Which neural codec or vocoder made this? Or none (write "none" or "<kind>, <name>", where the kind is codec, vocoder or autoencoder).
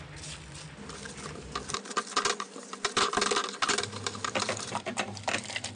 none